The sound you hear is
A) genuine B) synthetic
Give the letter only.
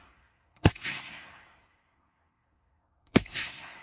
B